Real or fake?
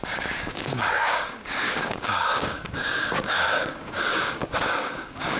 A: fake